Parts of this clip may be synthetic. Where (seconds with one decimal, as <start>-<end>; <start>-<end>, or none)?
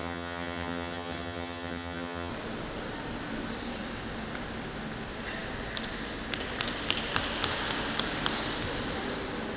0.0-2.3